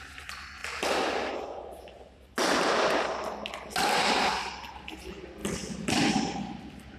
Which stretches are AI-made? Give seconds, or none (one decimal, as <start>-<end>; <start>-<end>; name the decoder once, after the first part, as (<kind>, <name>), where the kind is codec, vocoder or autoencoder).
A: none